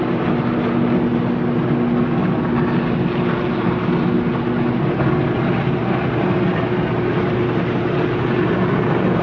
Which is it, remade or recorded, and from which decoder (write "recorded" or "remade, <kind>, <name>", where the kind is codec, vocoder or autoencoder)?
recorded